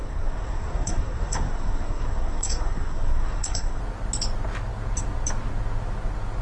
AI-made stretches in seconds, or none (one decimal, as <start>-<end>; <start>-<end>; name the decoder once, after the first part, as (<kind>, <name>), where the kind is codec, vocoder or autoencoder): 0.0-3.8 (codec, SNAC)